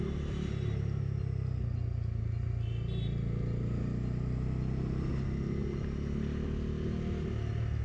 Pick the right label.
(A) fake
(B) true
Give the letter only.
B